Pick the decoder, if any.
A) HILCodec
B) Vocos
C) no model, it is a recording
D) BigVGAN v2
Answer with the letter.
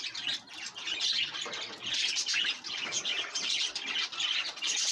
C